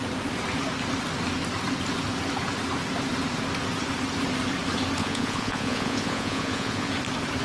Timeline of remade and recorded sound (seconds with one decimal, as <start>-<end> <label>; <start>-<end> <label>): 0.0-5.0 recorded; 5.0-6.9 remade; 6.9-7.4 recorded